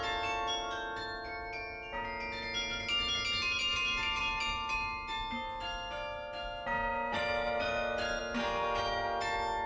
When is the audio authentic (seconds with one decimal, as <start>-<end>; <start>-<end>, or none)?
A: 0.0-6.9; 8.2-9.7